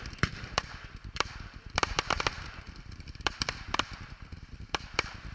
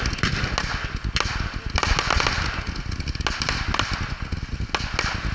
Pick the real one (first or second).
second